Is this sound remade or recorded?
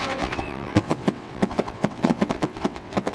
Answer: remade